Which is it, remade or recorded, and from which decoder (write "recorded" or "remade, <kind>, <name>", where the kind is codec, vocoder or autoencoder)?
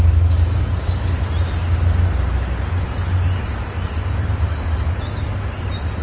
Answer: recorded